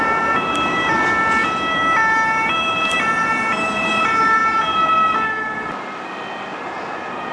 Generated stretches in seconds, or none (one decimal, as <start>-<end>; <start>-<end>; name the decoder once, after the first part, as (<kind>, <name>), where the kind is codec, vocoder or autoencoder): 0.0-4.4 (vocoder, BigVGAN v2); 6.1-7.3